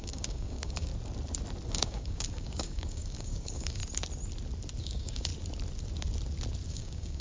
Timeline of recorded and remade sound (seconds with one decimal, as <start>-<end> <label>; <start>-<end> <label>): 0.0-0.9 remade; 0.9-1.7 recorded; 1.7-3.8 remade; 3.8-4.8 recorded; 4.8-5.3 remade; 5.3-6.7 recorded; 6.7-7.2 remade